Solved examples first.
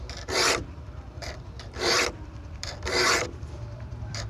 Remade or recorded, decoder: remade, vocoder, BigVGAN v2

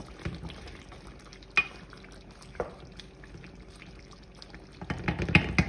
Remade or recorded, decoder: recorded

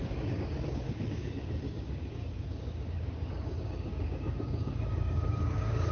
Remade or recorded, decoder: remade, codec, DAC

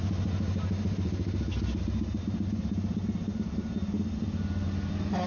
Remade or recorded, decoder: recorded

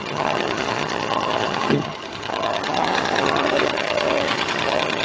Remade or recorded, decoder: remade, vocoder, HiFi-GAN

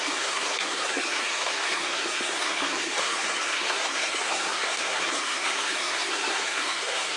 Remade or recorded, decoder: remade, codec, SNAC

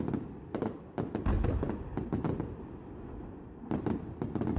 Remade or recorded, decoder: recorded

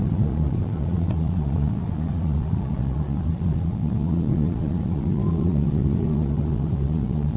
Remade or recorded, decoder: remade, vocoder, Vocos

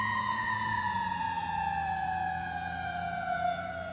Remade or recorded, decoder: remade, vocoder, Vocos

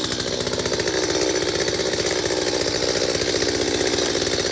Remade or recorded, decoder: recorded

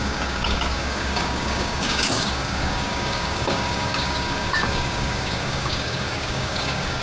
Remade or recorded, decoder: remade, codec, DAC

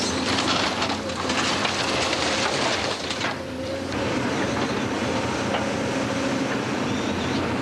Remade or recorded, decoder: remade, vocoder, BigVGAN v2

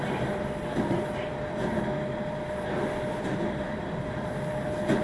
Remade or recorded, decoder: recorded